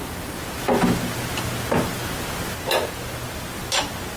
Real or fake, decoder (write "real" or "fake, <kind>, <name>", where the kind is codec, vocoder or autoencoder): real